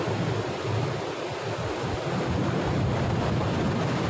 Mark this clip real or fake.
real